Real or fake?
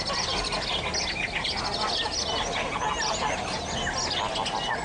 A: real